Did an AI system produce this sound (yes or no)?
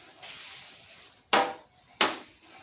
no